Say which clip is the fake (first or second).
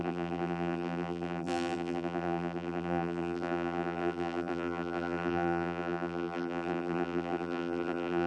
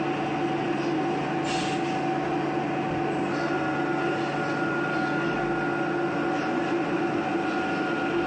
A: first